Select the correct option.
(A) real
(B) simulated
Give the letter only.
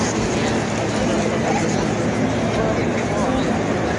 A